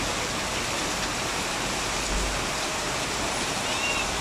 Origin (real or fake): real